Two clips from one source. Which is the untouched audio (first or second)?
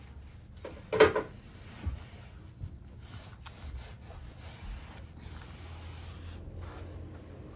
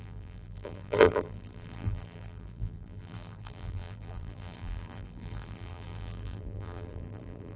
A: first